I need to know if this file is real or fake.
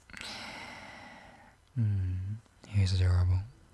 real